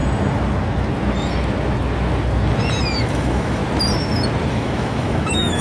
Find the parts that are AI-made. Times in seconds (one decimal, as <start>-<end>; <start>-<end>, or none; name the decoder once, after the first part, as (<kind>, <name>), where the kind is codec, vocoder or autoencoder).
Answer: 3.0-3.6 (autoencoder, DAC-VAE); 4.5-5.6